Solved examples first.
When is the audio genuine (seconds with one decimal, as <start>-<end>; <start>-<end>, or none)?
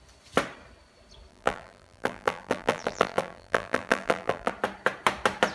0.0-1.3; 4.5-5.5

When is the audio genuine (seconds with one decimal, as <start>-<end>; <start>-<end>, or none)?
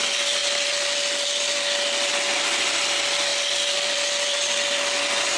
0.0-5.4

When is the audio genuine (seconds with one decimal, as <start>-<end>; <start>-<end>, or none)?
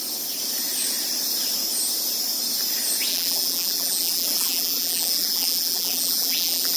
0.0-3.1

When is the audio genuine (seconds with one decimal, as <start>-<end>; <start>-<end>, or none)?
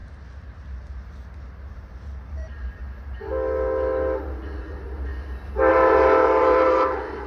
0.0-1.7; 2.8-4.6; 5.1-5.7